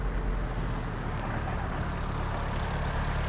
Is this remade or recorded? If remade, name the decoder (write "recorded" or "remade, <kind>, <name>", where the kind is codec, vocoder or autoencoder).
recorded